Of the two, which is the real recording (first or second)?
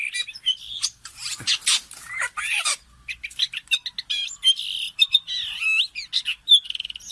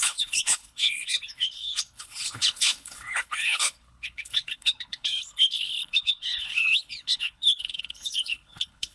first